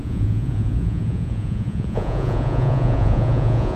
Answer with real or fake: fake